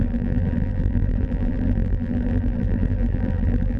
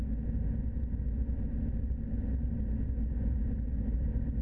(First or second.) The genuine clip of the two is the second